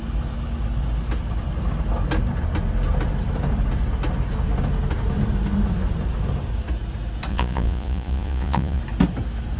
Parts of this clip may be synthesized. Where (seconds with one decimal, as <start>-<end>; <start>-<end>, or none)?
7.3-8.8